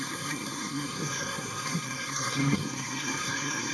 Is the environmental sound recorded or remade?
remade